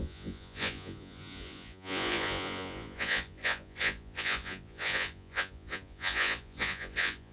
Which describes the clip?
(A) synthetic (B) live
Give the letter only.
A